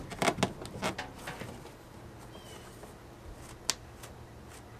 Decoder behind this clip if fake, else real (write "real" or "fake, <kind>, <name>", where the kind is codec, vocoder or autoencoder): real